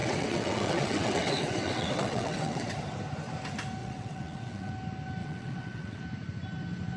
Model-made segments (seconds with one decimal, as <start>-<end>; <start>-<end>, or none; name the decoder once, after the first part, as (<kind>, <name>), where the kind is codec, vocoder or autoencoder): 0.0-2.7 (vocoder, WaveNeXt); 3.8-4.7; 5.2-6.0